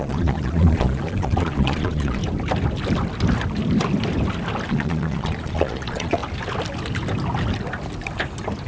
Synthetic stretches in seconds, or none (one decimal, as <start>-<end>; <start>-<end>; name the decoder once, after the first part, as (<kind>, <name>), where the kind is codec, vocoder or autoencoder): 0.0-2.2 (vocoder, Vocos); 4.7-6.2